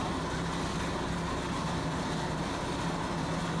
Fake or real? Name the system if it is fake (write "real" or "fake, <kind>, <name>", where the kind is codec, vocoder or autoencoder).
real